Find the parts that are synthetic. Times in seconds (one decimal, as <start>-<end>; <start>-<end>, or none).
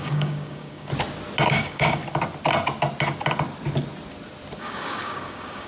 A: 0.0-0.9; 1.5-2.0; 4.6-5.7